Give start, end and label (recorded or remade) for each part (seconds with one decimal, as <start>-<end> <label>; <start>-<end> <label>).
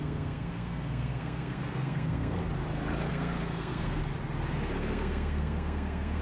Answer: 0.0-2.4 remade; 2.4-3.1 recorded; 3.1-4.0 remade; 4.0-4.8 recorded; 4.8-6.2 remade